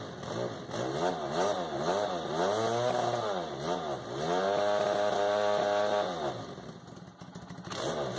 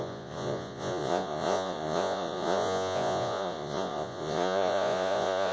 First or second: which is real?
first